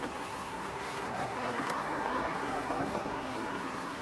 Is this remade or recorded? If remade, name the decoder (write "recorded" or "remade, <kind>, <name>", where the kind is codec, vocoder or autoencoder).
remade, codec, SNAC